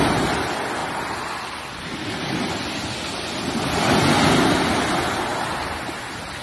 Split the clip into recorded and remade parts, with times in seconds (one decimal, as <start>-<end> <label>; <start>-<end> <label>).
0.0-6.4 recorded